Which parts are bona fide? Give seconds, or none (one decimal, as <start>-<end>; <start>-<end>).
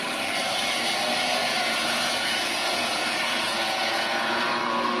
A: 0.0-1.4; 4.4-5.0